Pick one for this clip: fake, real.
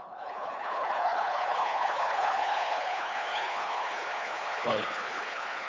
fake